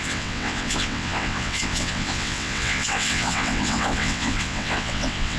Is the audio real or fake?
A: fake